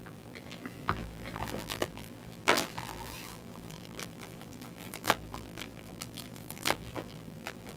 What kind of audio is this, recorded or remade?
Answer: remade